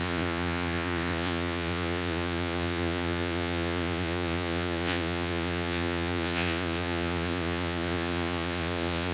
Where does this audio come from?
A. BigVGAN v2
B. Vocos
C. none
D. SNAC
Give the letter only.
B